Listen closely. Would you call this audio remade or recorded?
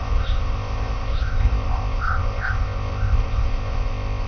remade